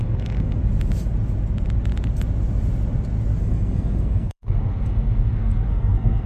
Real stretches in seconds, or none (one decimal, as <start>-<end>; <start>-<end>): 0.6-3.4